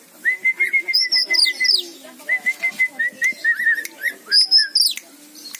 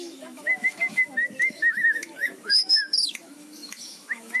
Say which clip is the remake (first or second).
second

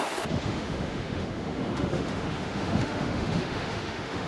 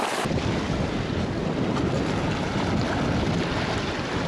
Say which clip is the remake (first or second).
first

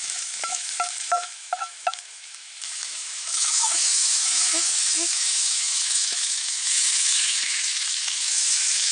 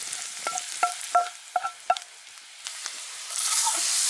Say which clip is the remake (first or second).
first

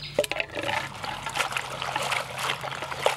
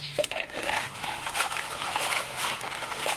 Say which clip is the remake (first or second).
second